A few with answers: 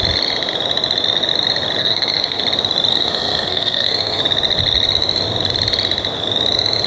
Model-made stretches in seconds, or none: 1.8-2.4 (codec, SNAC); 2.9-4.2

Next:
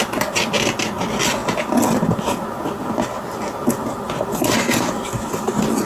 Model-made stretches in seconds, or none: none

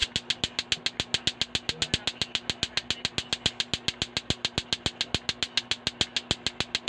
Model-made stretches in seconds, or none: none